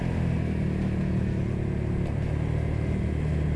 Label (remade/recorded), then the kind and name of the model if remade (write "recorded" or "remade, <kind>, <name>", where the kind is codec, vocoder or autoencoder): recorded